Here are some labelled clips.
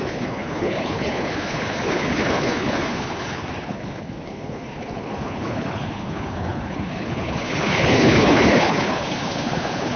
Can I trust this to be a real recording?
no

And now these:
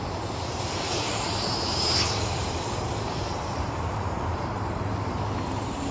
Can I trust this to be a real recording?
no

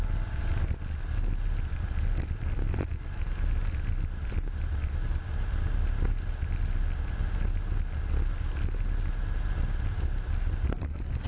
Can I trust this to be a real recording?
yes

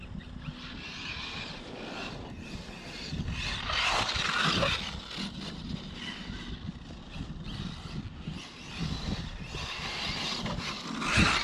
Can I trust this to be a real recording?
yes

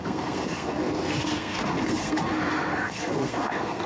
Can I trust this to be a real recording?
no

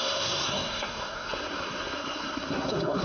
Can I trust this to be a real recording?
no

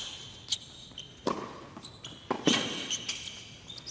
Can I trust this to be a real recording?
yes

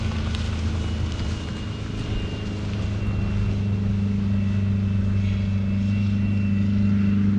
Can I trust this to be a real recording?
yes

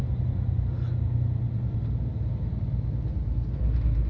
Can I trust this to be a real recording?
yes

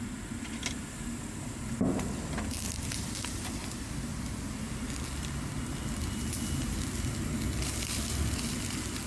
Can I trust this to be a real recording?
yes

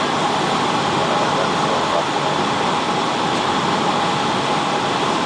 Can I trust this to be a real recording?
yes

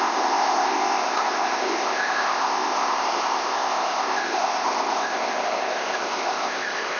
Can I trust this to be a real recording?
no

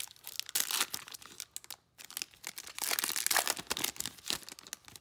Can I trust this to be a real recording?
yes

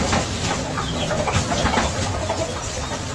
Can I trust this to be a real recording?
yes